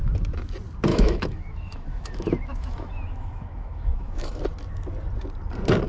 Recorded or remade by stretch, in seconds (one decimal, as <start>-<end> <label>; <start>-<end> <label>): 0.0-0.9 recorded; 0.9-4.4 remade; 4.4-5.9 recorded